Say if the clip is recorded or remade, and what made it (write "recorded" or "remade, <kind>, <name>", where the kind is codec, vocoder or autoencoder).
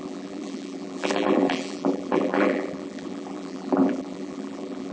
remade, vocoder, BigVGAN v2